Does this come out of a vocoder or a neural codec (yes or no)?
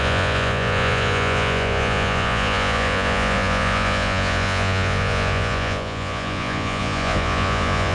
yes